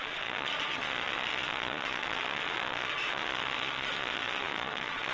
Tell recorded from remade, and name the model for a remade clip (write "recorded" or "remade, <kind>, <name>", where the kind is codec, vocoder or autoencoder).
remade, vocoder, Vocos